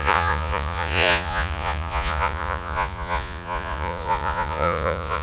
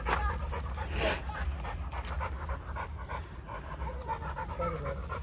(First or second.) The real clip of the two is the second